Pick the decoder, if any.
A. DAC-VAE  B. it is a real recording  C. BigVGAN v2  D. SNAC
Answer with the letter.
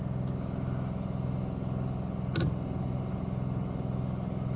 B